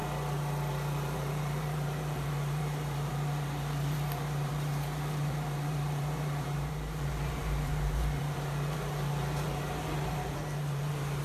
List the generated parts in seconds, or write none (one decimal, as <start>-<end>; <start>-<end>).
0.7-11.2